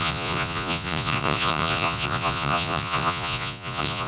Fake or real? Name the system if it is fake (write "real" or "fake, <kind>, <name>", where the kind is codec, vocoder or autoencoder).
fake, vocoder, Vocos